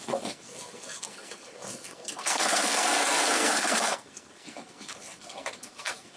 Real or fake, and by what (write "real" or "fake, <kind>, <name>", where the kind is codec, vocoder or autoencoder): fake, codec, SNAC